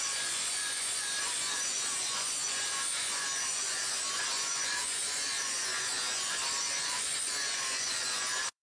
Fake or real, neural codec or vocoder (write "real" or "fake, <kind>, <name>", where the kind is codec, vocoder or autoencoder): fake, vocoder, Vocos